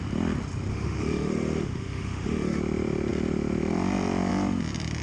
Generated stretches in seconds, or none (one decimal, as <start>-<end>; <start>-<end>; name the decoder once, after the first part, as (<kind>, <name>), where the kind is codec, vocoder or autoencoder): 0.7-2.6 (autoencoder, DAC-VAE)